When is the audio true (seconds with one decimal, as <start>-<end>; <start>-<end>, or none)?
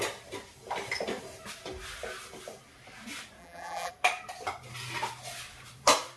0.0-3.4; 3.9-6.2